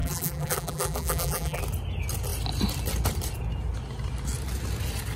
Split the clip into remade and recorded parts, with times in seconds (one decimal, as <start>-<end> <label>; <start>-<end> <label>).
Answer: 0.0-1.6 remade; 1.6-5.2 recorded